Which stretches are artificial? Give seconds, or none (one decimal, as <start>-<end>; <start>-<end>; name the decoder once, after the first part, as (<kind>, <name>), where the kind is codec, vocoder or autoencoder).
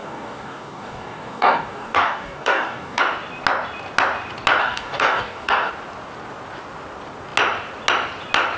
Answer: 0.0-3.0 (codec, DAC); 4.6-5.7